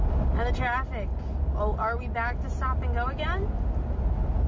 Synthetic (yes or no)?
no